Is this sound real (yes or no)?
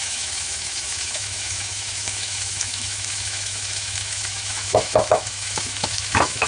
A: no